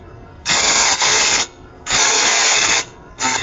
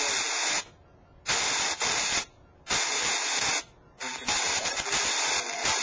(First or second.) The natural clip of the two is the second